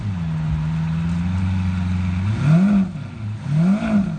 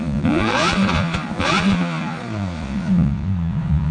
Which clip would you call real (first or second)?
first